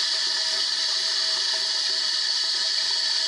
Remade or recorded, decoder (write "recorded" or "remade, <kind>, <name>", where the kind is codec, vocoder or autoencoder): recorded